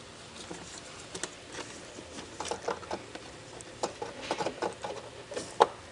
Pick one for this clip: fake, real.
real